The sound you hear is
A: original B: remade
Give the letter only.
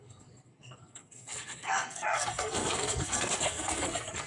B